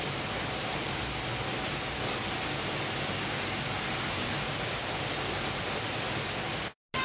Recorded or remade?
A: recorded